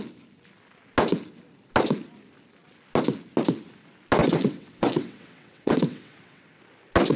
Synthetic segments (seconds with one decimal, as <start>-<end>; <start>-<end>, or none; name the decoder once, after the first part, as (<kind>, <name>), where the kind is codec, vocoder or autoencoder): 4.2-6.6 (vocoder, WaveNeXt)